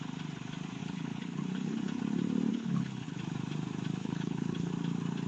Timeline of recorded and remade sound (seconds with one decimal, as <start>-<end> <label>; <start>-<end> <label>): 0.0-0.8 recorded; 0.8-2.0 remade; 2.0-2.5 recorded; 2.5-3.2 remade; 3.2-4.0 recorded; 4.0-4.7 remade; 4.7-5.3 recorded